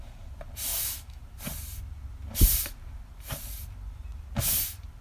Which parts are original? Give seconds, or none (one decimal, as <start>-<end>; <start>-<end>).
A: 0.0-0.7; 1.2-5.0